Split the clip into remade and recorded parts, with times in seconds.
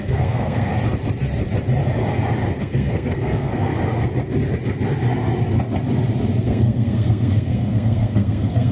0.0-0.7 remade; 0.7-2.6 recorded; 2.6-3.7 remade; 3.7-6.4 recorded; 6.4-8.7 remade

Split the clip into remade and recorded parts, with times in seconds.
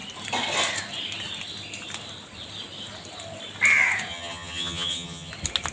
0.0-4.1 recorded; 4.1-5.3 remade; 5.3-5.7 recorded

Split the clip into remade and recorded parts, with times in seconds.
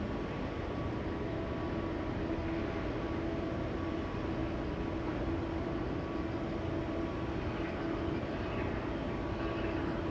0.0-10.1 recorded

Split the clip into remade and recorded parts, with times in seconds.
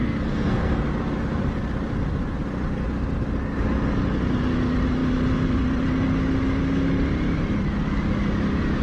0.0-0.9 remade; 0.9-8.8 recorded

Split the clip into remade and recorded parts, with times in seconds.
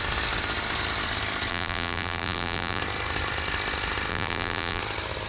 0.0-1.5 recorded; 1.5-2.8 remade; 2.8-4.1 recorded; 4.1-4.8 remade; 4.8-5.3 recorded